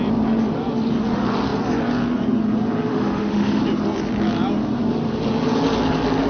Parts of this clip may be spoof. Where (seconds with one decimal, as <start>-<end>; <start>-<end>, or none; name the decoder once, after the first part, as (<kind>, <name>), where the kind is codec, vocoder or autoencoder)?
2.9-3.6 (autoencoder, DAC-VAE)